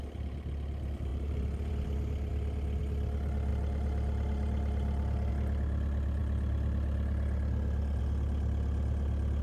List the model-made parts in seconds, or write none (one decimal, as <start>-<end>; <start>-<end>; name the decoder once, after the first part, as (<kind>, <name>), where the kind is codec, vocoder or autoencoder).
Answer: 1.1-1.7 (vocoder, BigVGAN v2); 3.5-5.3